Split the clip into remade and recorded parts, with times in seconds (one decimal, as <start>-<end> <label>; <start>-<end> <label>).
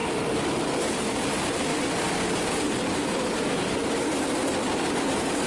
0.0-0.6 recorded; 0.6-1.7 remade; 1.7-2.5 recorded; 2.5-3.8 remade; 3.8-5.5 recorded